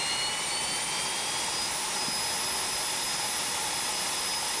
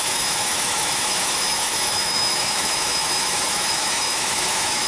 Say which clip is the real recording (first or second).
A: first